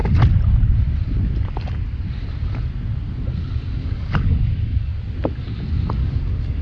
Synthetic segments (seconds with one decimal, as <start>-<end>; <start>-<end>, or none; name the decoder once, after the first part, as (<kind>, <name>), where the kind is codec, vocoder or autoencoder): 3.8-4.8 (codec, DAC); 6.0-6.6